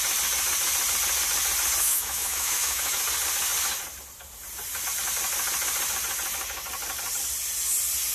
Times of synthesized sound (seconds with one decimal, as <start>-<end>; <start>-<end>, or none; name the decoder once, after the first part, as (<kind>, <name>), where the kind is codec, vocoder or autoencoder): 1.8-3.0 (autoencoder, DAC-VAE)

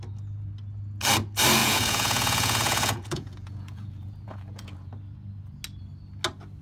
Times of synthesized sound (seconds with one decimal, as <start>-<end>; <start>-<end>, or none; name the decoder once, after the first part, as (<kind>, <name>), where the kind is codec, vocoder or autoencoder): 1.6-4.9 (vocoder, Vocos)